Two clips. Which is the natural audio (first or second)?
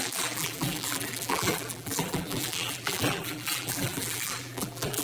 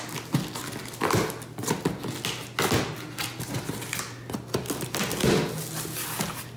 second